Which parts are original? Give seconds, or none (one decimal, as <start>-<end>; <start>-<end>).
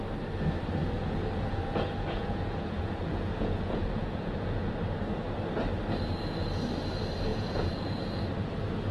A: 0.0-0.8; 4.7-7.3; 8.2-8.9